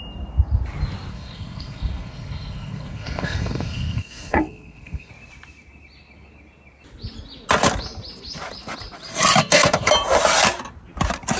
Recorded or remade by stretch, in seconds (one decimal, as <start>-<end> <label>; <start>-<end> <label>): 0.0-1.1 recorded; 1.1-5.1 remade; 5.1-9.4 recorded; 9.4-9.9 remade; 9.9-11.4 recorded